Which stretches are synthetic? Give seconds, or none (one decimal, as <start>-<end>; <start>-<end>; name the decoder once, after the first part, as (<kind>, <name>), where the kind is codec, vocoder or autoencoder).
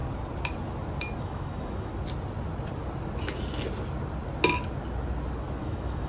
1.2-1.9 (autoencoder, DAC-VAE); 5.6-6.1